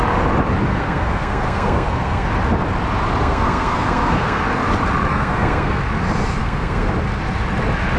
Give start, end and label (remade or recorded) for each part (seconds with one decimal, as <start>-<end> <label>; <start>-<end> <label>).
0.0-0.7 recorded; 0.7-2.3 remade; 2.3-3.2 recorded; 3.2-4.4 remade; 4.4-5.1 recorded; 5.1-5.8 remade; 5.8-6.4 recorded; 6.4-6.9 remade; 6.9-8.0 recorded